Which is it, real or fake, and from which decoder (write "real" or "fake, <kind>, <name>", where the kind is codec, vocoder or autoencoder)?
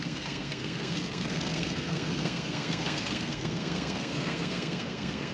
fake, codec, SNAC